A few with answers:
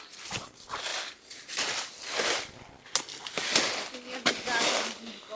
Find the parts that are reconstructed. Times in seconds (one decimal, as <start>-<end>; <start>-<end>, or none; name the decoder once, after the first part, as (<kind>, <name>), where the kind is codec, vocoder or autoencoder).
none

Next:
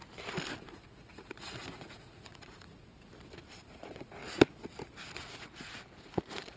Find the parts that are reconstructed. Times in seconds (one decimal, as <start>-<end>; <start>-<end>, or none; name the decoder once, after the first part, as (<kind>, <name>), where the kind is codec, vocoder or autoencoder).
0.7-2.9 (vocoder, Vocos); 3.7-4.2; 5.0-6.6

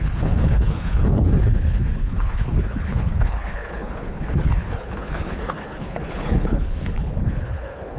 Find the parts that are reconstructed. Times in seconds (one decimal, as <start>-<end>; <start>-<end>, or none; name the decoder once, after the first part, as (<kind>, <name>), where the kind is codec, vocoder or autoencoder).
0.0-8.0 (codec, HILCodec)